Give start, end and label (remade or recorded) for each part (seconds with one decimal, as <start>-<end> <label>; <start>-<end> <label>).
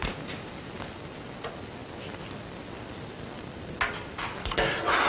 0.0-0.5 remade; 0.5-5.1 recorded